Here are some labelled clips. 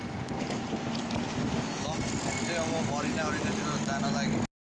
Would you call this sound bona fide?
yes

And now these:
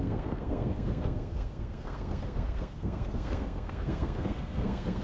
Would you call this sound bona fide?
no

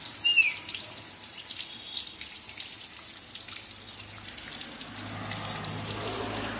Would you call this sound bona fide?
yes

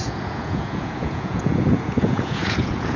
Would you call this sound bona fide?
no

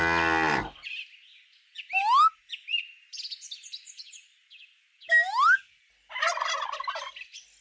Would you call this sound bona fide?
yes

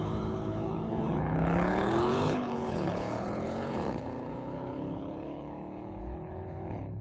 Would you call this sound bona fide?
no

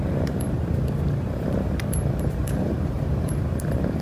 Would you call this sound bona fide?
no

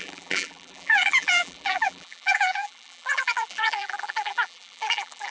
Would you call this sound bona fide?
no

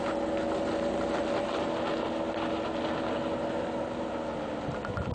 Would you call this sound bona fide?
yes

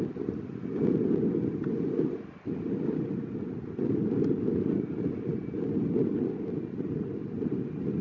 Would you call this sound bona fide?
yes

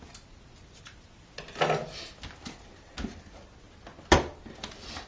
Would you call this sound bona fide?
yes